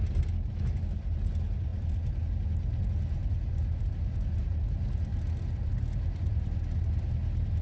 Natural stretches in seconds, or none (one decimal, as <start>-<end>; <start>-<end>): 0.0-7.6